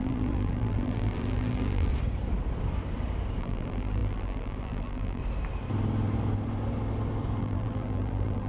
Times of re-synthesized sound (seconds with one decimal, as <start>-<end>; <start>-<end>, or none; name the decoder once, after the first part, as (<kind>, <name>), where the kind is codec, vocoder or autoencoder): 0.0-1.9 (vocoder, BigVGAN v2); 3.4-5.2; 7.4-8.5